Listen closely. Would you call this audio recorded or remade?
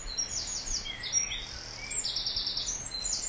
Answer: recorded